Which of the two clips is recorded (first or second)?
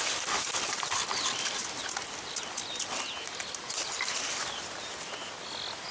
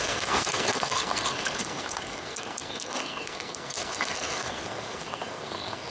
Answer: first